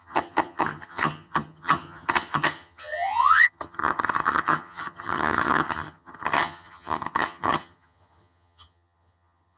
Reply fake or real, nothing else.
fake